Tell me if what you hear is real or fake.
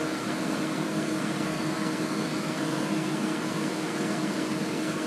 fake